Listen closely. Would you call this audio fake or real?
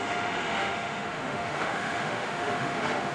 fake